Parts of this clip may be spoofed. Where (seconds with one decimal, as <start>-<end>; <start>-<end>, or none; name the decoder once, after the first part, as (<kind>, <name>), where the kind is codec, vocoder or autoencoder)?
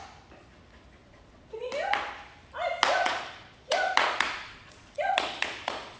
1.0-1.7 (vocoder, Vocos); 3.0-6.0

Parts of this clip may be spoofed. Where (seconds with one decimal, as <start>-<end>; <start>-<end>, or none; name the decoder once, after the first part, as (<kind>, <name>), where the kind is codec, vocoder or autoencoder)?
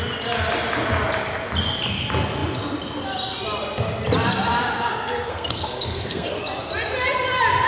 4.9-6.4 (codec, SNAC)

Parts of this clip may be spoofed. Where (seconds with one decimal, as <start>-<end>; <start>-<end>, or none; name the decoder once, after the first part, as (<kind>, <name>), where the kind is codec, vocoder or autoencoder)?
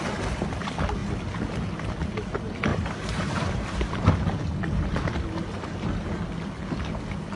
2.7-4.1 (vocoder, BigVGAN v2)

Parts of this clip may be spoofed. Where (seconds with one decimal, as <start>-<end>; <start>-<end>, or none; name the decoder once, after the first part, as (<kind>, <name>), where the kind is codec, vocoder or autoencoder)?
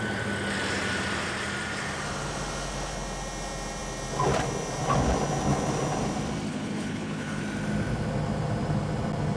6.5-7.4 (codec, HILCodec)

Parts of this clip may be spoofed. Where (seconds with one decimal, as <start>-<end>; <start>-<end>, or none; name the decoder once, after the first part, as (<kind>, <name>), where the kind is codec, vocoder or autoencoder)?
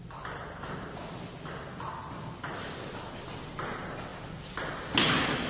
none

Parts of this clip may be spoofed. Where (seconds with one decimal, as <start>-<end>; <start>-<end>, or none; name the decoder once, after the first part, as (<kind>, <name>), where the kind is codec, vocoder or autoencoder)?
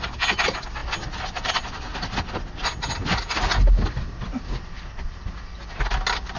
none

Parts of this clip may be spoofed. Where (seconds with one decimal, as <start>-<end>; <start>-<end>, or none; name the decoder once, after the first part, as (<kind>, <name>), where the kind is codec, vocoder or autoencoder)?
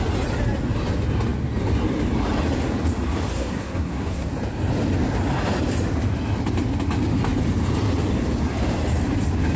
3.3-4.3 (codec, SNAC)